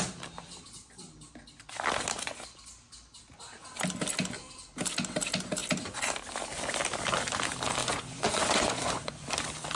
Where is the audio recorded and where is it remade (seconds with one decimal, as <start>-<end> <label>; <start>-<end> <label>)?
0.0-7.8 recorded; 7.8-9.3 remade; 9.3-9.8 recorded